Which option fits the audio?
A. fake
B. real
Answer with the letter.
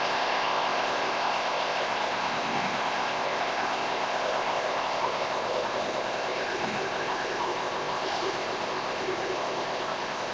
A